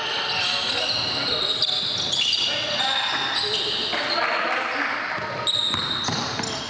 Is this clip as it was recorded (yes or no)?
yes